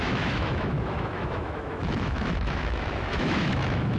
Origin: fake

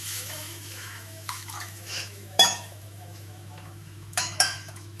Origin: fake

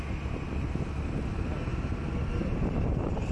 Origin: real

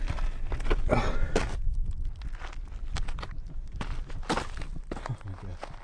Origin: real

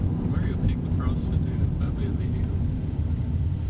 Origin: real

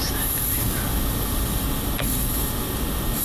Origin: real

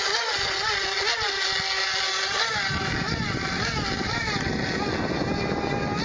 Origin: real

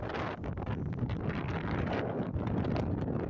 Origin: real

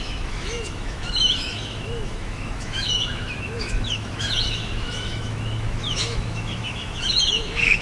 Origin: fake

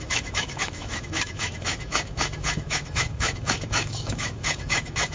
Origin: fake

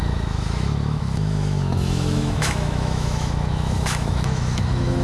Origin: fake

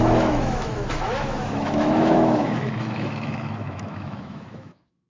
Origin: fake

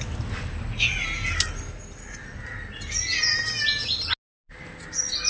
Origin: real